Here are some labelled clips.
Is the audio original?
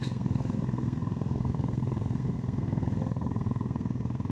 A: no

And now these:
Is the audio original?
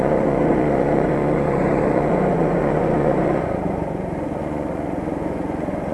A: no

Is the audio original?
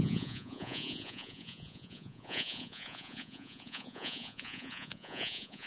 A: no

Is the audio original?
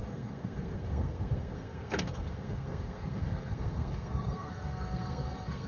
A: no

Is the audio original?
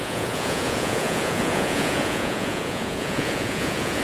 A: no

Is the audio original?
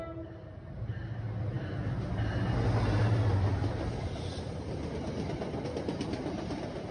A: yes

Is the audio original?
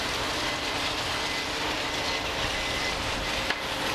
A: yes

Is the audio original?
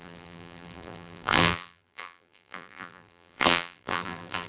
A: no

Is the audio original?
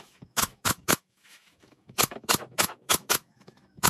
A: no